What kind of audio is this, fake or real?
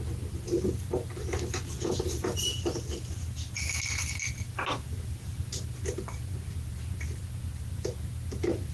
real